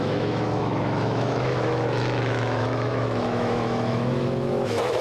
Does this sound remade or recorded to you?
remade